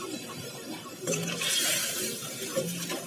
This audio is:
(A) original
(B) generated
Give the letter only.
B